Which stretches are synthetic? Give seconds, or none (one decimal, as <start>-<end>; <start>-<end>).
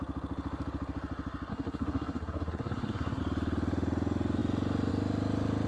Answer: 1.5-3.2